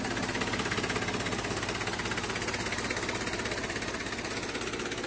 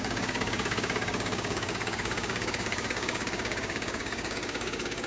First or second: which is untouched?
first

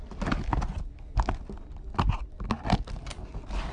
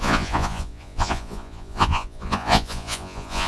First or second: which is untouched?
first